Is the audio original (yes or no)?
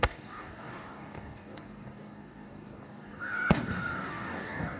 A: no